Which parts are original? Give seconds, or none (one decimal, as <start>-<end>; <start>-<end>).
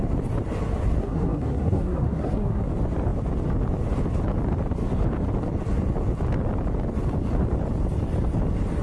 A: 0.0-1.0; 2.7-8.8